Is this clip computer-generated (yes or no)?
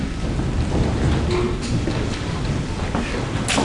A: no